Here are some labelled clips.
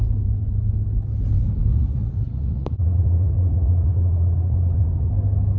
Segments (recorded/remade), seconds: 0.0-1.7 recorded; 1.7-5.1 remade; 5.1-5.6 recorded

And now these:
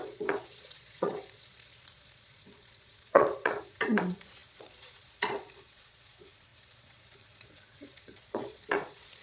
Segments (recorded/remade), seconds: 0.0-9.2 remade

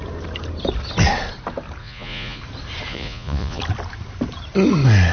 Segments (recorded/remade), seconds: 0.0-1.8 recorded; 1.8-2.4 remade; 2.4-2.9 recorded; 2.9-3.6 remade; 3.6-5.1 recorded

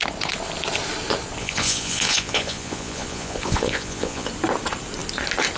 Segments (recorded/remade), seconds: 0.0-1.4 recorded; 1.4-4.3 remade; 4.3-5.6 recorded

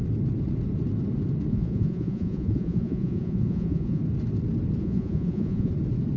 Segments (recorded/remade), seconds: 0.0-1.5 recorded; 1.5-4.0 remade; 4.0-4.8 recorded; 4.8-5.7 remade; 5.7-6.2 recorded

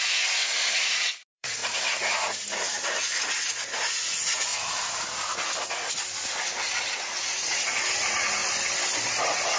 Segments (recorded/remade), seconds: 0.0-1.6 remade; 1.6-3.9 recorded; 3.9-4.5 remade; 4.5-7.0 recorded; 7.0-8.4 remade; 8.4-9.6 recorded